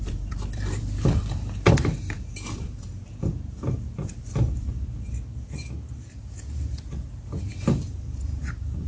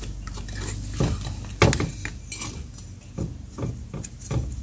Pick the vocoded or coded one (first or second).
first